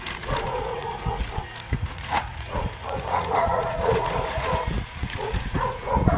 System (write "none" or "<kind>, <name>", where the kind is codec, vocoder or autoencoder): vocoder, Vocos